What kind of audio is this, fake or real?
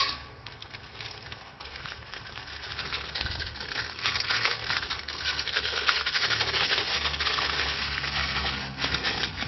fake